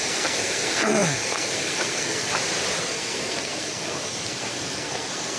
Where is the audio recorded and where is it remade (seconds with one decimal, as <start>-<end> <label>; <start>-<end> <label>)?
0.0-2.3 remade; 2.3-2.8 recorded; 2.8-5.4 remade